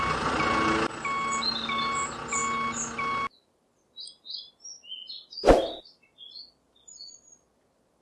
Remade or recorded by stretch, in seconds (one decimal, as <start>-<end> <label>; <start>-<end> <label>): 0.0-8.0 recorded